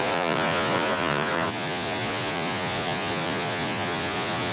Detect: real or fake fake